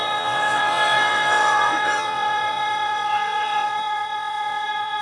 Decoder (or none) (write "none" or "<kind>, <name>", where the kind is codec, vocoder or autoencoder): vocoder, WaveNeXt